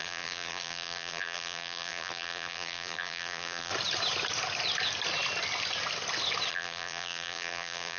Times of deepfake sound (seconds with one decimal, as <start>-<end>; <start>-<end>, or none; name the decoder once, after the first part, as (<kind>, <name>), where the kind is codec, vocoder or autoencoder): 0.0-3.7 (vocoder, BigVGAN v2); 6.5-8.0